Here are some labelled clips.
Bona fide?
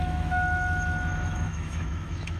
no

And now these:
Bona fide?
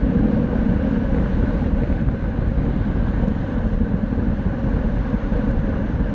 yes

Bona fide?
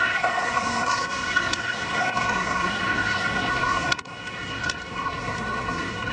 no